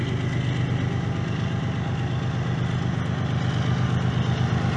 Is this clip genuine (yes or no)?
yes